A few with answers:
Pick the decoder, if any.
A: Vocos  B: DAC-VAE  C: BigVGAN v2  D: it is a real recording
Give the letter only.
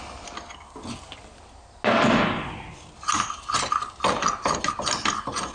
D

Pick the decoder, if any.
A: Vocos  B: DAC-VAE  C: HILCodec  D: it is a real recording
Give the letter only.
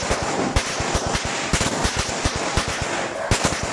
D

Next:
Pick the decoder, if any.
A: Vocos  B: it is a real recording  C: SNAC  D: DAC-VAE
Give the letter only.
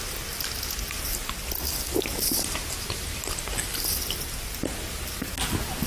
B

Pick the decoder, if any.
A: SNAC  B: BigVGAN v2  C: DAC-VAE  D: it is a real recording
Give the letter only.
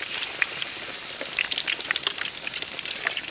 D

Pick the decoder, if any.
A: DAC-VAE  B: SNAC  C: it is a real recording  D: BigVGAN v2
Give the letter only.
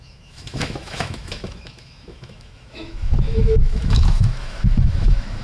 A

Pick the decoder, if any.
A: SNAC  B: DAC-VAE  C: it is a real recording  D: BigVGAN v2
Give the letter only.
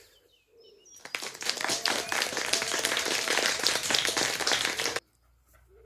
C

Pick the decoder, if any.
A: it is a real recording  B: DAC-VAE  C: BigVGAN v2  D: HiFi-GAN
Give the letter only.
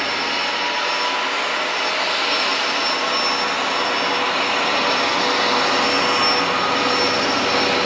A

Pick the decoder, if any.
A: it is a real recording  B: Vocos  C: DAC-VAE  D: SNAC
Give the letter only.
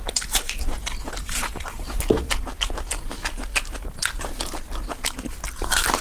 A